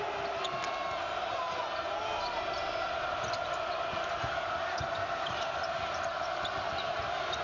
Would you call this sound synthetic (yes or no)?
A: no